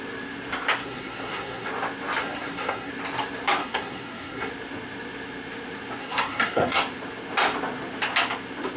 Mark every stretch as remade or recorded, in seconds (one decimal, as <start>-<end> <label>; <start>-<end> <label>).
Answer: 0.0-0.8 recorded; 0.8-1.7 remade; 1.7-2.2 recorded; 2.2-2.9 remade; 2.9-3.6 recorded; 3.6-4.5 remade; 4.5-6.0 recorded; 6.0-6.8 remade; 6.8-8.8 recorded